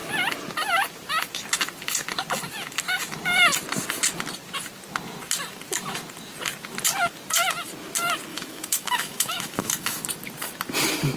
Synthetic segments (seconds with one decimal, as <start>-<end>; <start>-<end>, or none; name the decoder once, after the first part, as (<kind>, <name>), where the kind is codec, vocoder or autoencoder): 8.3-10.0 (autoencoder, DAC-VAE)